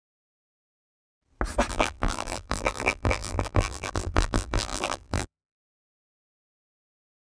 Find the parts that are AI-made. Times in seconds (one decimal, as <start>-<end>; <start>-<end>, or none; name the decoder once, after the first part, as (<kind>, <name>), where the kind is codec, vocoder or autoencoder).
0.0-1.1 (vocoder, BigVGAN v2); 1.7-7.3

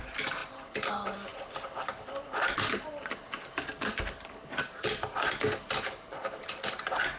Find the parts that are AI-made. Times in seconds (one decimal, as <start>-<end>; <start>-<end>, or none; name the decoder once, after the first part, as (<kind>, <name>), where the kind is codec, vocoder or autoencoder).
none

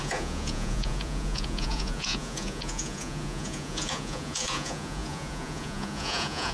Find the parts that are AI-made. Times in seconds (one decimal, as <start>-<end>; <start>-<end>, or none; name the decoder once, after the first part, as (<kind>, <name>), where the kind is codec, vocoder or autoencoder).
0.0-6.5 (vocoder, Vocos)

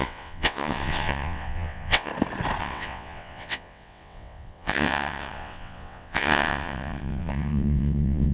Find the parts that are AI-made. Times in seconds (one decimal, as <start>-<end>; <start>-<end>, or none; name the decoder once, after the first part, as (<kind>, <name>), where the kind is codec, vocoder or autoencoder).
0.0-2.1 (vocoder, WaveNeXt); 2.6-8.3

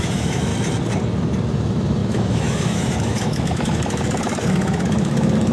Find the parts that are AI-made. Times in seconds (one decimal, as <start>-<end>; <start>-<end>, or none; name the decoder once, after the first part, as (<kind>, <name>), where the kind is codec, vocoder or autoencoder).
0.0-0.5 (autoencoder, DAC-VAE); 1.5-5.5

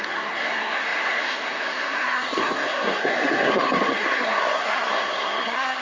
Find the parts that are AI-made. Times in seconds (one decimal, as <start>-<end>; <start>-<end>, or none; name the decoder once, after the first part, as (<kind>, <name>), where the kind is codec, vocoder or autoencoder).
0.0-5.8 (codec, SNAC)